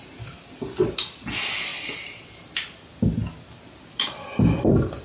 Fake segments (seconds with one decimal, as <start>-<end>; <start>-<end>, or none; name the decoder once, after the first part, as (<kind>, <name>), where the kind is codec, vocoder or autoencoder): none